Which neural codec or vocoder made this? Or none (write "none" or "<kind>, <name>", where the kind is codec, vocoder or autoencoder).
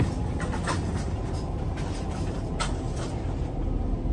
vocoder, BigVGAN v2